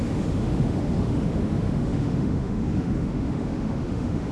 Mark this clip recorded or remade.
remade